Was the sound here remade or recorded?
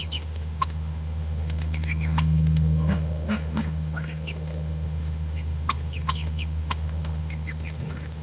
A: remade